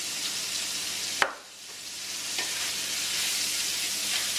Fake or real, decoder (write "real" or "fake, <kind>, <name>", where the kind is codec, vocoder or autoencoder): real